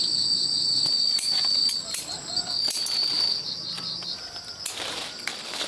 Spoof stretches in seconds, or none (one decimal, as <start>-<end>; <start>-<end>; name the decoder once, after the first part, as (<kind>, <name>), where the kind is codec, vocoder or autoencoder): 0.0-3.0 (vocoder, BigVGAN v2)